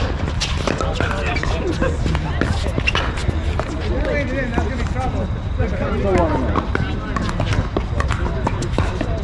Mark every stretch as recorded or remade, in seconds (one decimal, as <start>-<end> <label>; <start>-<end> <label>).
0.0-9.2 recorded